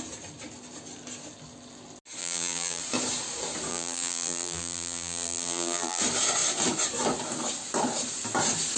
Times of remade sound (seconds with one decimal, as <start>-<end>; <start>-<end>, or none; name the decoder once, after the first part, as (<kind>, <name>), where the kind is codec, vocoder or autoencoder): 2.2-2.8 (vocoder, BigVGAN v2); 3.7-6.0